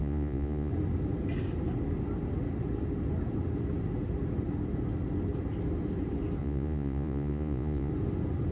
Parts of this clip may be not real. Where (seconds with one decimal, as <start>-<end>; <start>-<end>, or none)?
0.0-0.7; 6.4-7.9